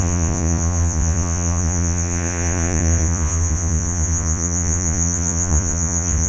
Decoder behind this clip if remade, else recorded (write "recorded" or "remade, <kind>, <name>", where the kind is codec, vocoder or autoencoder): remade, vocoder, Vocos